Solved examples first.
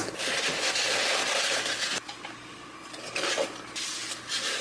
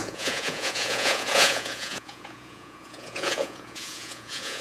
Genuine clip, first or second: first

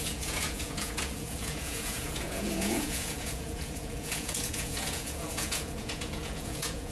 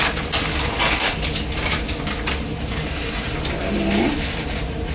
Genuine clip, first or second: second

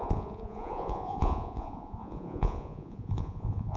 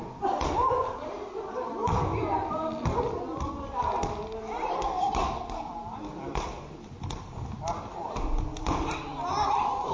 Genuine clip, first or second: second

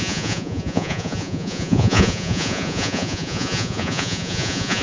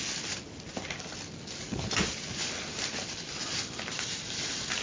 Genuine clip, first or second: second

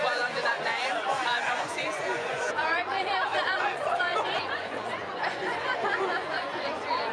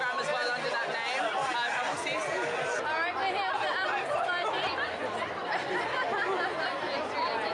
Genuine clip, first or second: second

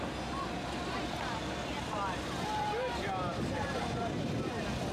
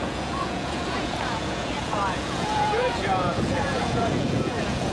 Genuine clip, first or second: first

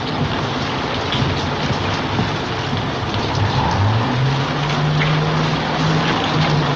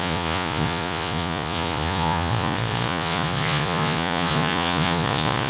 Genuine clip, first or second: first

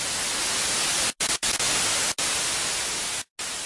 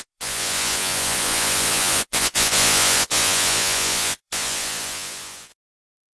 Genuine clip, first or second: first